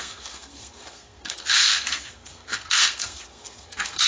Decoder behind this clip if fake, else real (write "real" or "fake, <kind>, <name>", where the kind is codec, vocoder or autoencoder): fake, codec, SNAC